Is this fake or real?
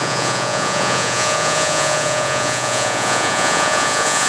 fake